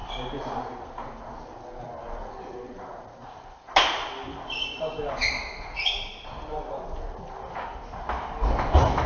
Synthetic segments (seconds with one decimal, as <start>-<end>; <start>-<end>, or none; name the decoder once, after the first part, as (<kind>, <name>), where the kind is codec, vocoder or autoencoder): none